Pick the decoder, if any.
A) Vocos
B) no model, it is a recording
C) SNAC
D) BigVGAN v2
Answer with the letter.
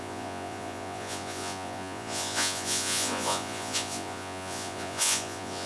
A